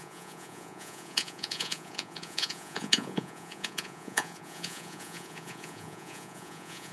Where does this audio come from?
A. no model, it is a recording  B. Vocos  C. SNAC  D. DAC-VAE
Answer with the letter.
B